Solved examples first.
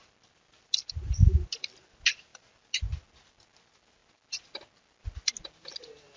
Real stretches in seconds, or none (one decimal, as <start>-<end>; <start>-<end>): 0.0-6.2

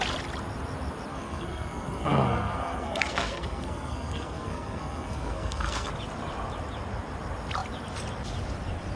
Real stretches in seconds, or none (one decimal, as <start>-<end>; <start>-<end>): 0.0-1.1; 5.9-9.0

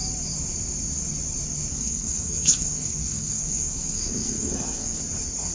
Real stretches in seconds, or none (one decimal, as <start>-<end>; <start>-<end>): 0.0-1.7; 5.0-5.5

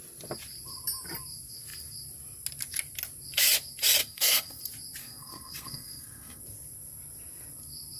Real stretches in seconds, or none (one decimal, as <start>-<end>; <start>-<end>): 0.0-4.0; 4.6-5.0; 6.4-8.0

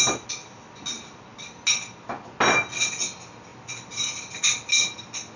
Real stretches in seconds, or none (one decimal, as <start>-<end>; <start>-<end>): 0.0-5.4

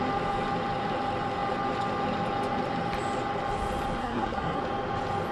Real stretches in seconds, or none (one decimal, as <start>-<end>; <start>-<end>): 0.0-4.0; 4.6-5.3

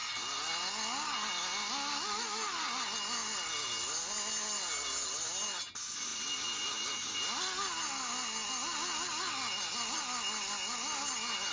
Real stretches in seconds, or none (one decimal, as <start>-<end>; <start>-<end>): 0.0-11.5